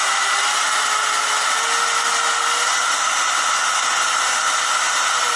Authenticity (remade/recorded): recorded